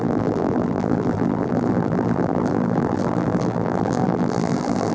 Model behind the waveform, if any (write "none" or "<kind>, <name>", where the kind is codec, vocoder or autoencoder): vocoder, BigVGAN v2